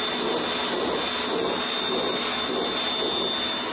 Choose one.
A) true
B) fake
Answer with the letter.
A